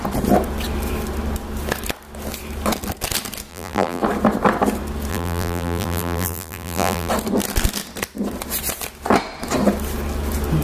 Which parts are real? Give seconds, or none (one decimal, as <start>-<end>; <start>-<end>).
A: 0.0-3.5; 4.0-5.1; 7.1-10.6